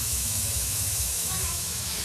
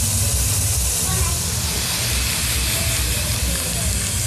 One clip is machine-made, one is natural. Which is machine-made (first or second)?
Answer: first